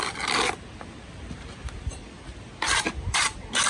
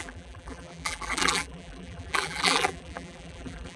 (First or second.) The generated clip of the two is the second